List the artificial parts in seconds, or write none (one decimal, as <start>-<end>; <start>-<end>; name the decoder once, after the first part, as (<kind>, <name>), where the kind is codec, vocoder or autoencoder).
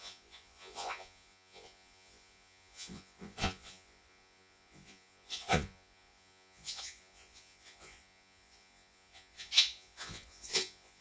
0.0-11.0 (vocoder, Vocos)